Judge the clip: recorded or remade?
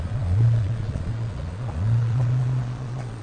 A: remade